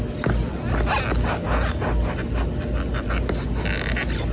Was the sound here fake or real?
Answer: real